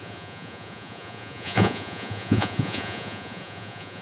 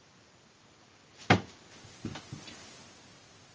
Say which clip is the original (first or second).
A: second